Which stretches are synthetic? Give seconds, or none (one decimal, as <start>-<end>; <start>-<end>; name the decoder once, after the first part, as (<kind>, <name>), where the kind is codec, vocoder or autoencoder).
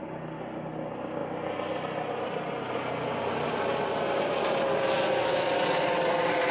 none